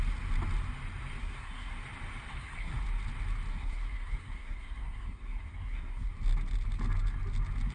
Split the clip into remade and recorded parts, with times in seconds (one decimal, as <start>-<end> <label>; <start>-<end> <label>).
0.0-1.2 recorded; 1.2-1.7 remade; 1.7-2.3 recorded; 2.3-2.8 remade; 2.8-3.5 recorded; 3.5-6.1 remade; 6.1-7.7 recorded